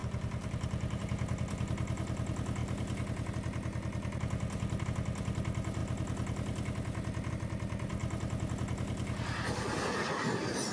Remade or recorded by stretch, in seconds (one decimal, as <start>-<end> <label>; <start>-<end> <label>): 0.0-1.0 remade; 1.0-10.7 recorded